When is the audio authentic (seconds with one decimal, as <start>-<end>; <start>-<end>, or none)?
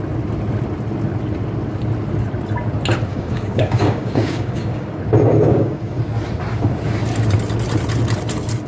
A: 0.0-3.1; 5.0-5.5; 6.0-8.7